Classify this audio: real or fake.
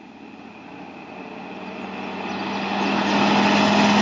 real